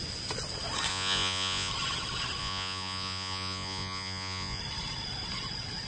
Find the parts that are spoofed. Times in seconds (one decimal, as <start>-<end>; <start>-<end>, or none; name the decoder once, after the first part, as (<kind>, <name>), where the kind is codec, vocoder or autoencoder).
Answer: 0.9-1.7 (vocoder, Vocos); 2.4-4.6